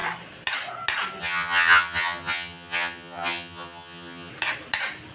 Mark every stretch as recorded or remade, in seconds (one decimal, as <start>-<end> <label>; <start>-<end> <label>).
0.0-1.2 recorded; 1.2-4.3 remade; 4.3-5.1 recorded